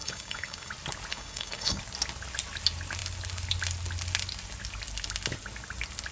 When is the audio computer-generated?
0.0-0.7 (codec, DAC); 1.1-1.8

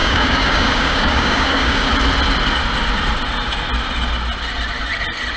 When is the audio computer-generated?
0.0-1.9 (codec, DAC)

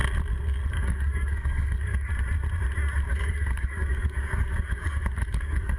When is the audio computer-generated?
0.7-2.1 (codec, DAC); 3.1-5.8

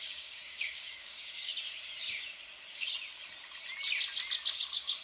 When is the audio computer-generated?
0.0-1.5 (codec, DAC); 4.5-5.0